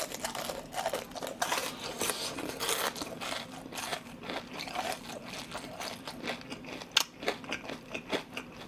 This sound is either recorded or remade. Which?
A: recorded